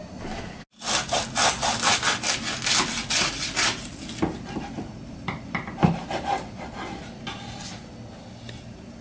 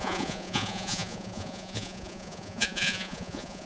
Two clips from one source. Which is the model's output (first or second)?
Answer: second